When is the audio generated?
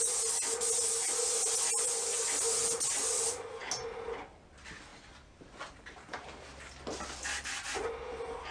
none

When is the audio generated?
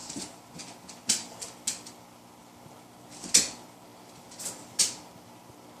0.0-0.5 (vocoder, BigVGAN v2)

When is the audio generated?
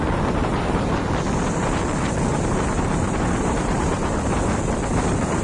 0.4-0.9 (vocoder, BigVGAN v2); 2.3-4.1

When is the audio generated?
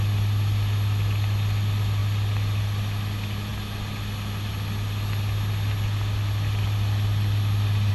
none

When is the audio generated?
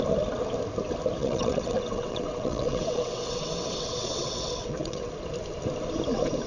1.2-5.1 (vocoder, WaveNeXt)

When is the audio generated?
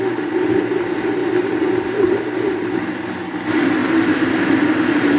none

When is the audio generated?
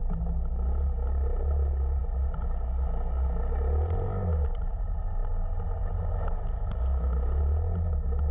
none